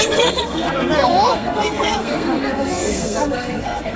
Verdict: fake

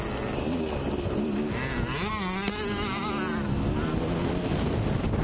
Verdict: real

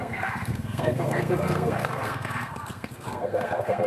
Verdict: fake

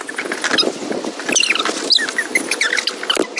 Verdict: real